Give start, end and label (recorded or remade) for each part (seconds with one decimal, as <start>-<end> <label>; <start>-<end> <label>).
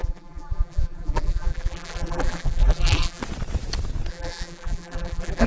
0.0-3.2 remade; 3.2-4.1 recorded; 4.1-5.5 remade